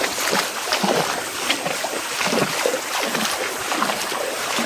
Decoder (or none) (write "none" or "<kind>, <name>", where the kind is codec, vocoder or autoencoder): none